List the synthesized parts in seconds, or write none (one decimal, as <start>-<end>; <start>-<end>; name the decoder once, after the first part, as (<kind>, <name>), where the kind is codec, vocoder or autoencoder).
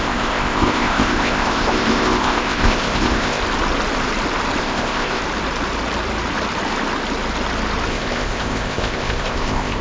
0.0-3.4 (codec, ZipCodec); 4.6-5.2; 7.9-9.8